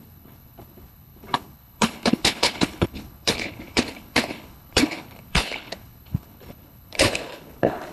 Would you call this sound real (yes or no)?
no